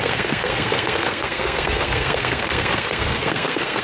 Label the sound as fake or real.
fake